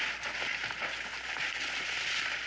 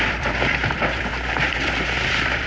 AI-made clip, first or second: second